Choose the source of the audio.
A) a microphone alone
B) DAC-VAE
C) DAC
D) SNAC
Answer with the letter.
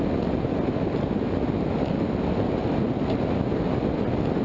A